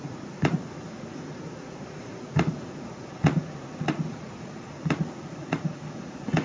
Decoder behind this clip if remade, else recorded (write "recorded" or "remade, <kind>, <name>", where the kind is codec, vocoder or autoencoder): remade, vocoder, Vocos